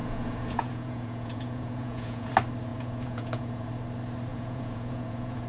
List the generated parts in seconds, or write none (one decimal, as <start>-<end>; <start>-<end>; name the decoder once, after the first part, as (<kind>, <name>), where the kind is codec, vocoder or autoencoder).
0.0-2.3 (vocoder, Vocos); 2.7-3.7; 4.3-5.5